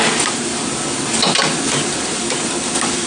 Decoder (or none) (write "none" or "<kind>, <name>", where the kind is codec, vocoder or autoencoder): none